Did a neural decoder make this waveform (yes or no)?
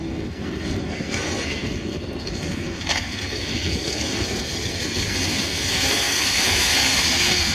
yes